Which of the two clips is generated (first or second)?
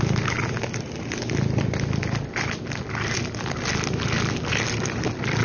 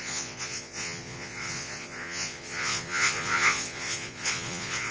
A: second